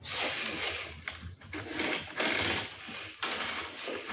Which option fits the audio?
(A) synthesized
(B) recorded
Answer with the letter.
B